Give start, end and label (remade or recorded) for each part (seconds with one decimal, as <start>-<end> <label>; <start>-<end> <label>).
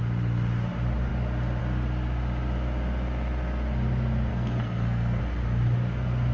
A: 0.0-4.3 recorded; 4.3-5.2 remade; 5.2-6.3 recorded